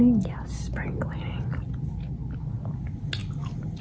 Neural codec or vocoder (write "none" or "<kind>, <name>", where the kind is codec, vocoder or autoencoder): none